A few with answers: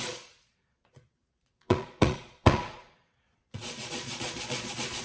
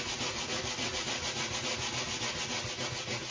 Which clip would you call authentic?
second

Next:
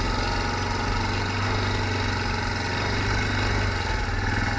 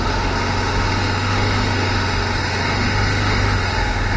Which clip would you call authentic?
first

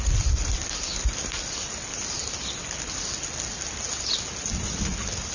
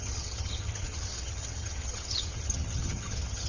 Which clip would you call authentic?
first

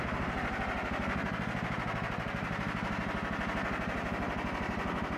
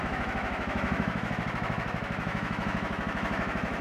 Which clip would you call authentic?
first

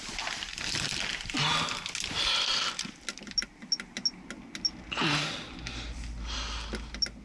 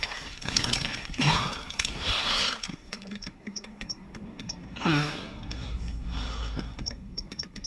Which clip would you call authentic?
first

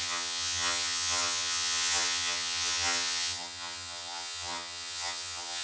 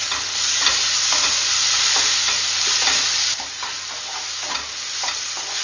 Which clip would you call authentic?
second